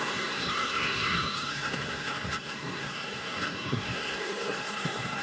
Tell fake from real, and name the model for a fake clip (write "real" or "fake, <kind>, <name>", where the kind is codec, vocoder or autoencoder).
fake, codec, SNAC